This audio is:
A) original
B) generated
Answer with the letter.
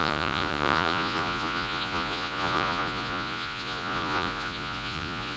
B